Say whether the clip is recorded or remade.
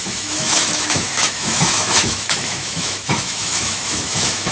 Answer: remade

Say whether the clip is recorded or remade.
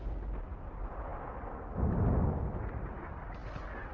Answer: recorded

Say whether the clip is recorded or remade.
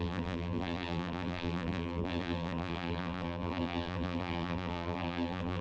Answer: remade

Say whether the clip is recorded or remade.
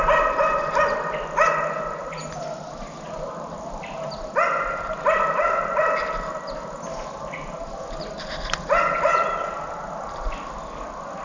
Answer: recorded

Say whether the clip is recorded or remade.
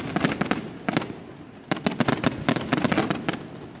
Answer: recorded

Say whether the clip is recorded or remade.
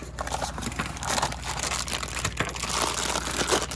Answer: recorded